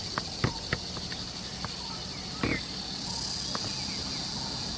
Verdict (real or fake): real